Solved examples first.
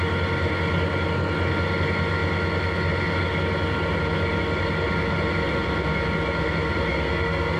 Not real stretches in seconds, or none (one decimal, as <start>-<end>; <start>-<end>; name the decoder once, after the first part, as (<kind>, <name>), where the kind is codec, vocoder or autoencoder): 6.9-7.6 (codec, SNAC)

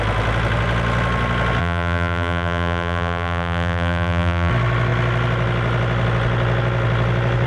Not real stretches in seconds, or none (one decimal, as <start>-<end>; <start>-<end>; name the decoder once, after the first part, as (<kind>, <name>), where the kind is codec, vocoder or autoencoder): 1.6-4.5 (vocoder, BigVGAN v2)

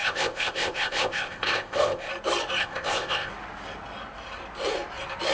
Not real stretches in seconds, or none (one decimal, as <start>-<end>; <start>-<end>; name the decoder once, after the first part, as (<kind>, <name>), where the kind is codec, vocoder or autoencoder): 0.0-2.1 (codec, ZipCodec); 2.6-3.3

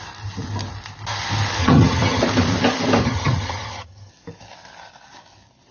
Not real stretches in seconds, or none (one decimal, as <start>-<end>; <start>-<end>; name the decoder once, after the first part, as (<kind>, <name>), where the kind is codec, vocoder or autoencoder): 1.6-2.2 (vocoder, HiFi-GAN); 3.0-4.1

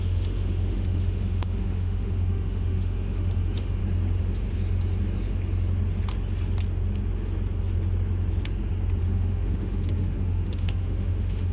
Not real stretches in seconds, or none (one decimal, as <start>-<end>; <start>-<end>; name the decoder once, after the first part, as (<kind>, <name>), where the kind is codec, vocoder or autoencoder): 0.0-3.8 (autoencoder, DAC-VAE); 9.0-11.5